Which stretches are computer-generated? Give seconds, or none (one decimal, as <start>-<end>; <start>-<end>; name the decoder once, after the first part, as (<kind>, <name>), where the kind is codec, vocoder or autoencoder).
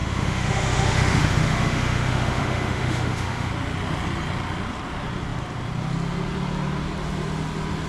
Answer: 0.0-3.5 (autoencoder, DAC-VAE)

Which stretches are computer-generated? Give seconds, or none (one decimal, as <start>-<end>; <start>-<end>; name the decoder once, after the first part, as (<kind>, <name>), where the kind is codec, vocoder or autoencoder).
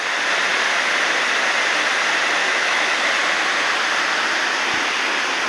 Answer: 2.4-3.1 (autoencoder, DAC-VAE)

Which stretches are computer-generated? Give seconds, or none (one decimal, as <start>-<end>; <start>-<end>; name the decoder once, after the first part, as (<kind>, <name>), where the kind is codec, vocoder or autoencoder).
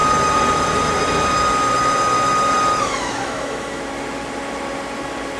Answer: 2.7-3.8 (autoencoder, DAC-VAE)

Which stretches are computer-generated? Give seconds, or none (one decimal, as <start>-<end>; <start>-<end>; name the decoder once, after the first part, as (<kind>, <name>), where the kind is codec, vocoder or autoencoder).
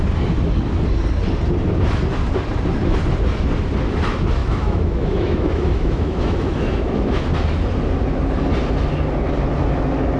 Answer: 4.4-7.2 (autoencoder, DAC-VAE)